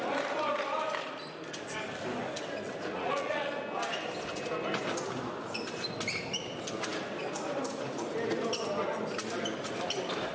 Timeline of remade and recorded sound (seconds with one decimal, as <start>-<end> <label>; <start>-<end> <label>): 0.0-2.9 recorded; 2.9-3.5 remade; 3.5-10.3 recorded